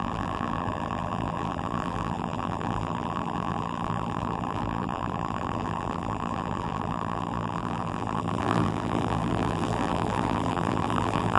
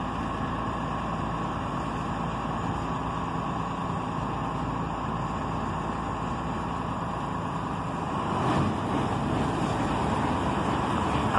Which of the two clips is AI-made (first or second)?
first